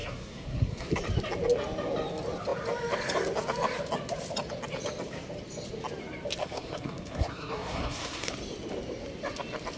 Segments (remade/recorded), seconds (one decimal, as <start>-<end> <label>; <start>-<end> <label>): 0.0-1.0 remade; 1.0-6.4 recorded; 6.4-8.3 remade; 8.3-9.8 recorded